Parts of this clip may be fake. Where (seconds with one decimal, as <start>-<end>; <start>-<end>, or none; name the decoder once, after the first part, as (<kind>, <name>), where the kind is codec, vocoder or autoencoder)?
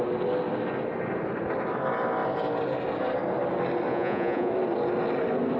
3.9-4.5 (vocoder, Vocos)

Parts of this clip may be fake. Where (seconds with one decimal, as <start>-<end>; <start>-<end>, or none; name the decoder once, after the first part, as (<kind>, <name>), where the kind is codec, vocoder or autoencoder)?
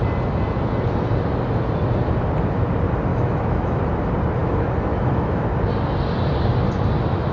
3.1-3.8 (autoencoder, DAC-VAE); 4.4-5.4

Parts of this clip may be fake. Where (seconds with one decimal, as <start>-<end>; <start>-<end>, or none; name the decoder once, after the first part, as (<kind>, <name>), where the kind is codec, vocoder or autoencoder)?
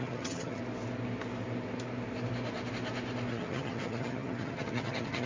0.0-0.6 (vocoder, HiFi-GAN); 3.3-5.3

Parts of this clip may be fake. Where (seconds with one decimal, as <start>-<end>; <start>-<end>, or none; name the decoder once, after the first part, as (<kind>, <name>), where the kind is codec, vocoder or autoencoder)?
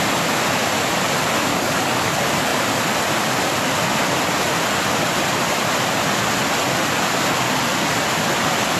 1.5-2.1 (codec, DAC)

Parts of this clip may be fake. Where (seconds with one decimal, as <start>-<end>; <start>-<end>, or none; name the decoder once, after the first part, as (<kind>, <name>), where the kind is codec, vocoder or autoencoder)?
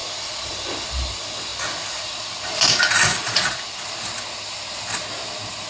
3.1-3.6 (vocoder, Vocos)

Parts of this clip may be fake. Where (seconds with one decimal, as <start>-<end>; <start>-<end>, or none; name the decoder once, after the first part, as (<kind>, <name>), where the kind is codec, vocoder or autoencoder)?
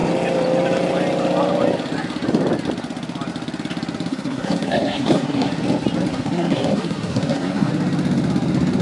4.1-5.5 (codec, SNAC); 6.1-7.7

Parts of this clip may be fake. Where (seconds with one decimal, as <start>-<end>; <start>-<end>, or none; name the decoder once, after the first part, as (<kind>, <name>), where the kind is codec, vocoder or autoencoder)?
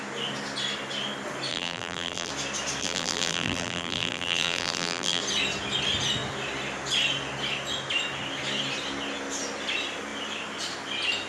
1.5-2.3 (vocoder, BigVGAN v2); 2.8-5.2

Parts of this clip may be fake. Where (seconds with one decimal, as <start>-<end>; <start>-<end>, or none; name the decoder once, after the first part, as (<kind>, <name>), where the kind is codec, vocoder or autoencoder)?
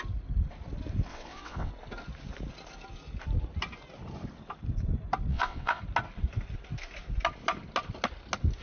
1.1-1.7 (vocoder, WaveNeXt); 5.3-5.8